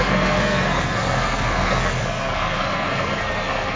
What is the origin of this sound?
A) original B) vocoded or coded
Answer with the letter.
B